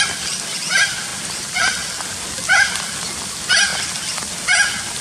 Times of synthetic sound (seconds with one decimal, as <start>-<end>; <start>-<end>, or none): none